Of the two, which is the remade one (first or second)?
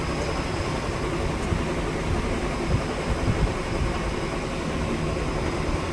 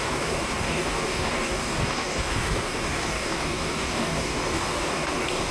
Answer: second